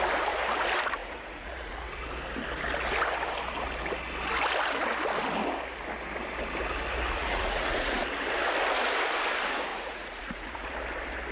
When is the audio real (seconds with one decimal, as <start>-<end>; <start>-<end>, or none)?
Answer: 0.0-1.0; 1.9-7.2; 8.0-9.7; 10.7-11.3